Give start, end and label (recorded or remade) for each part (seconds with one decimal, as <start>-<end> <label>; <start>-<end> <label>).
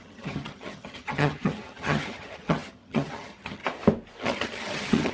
0.0-3.6 remade; 3.6-4.2 recorded; 4.2-5.1 remade